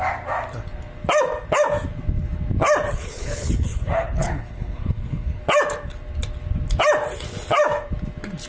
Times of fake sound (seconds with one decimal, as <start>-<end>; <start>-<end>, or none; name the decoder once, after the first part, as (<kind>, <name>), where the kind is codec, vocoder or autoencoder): 2.9-5.4 (codec, HILCodec)